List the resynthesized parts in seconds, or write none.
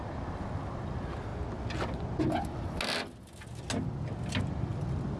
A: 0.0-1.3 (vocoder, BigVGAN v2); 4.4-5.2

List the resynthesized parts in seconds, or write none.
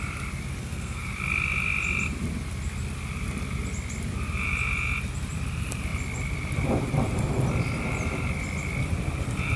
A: 0.6-1.1 (codec, SNAC)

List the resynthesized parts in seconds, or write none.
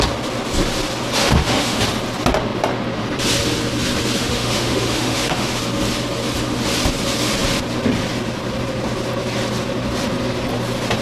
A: 1.2-1.8 (autoencoder, DAC-VAE); 4.2-5.6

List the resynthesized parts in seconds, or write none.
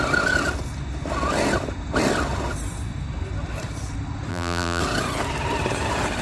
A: 4.3-4.8 (vocoder, BigVGAN v2)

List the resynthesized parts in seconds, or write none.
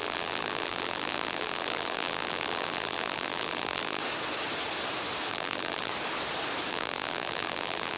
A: 0.0-4.0 (vocoder, BigVGAN v2); 5.3-5.9; 6.7-8.0